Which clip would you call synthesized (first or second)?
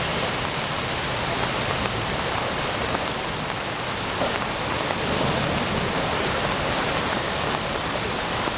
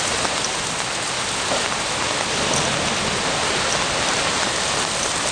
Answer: first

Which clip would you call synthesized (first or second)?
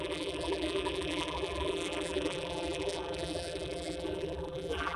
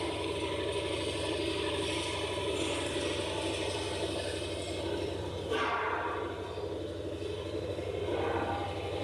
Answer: first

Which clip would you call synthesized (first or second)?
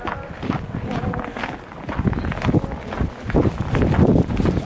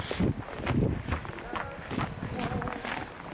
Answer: first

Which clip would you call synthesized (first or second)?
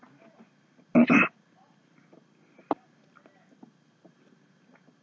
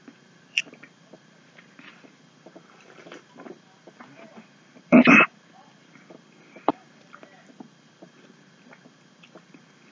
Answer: second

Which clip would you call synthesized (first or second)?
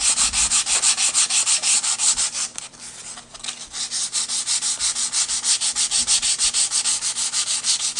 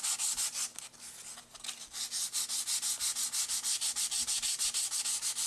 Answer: first